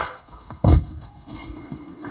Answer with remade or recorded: remade